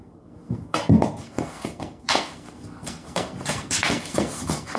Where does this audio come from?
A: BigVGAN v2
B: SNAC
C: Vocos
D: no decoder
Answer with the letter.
B